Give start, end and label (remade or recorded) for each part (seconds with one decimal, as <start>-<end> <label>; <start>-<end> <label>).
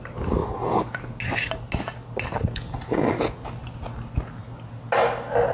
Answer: 0.0-5.5 recorded